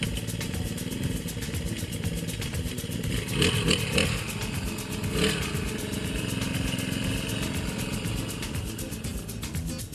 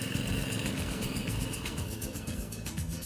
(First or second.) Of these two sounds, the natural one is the first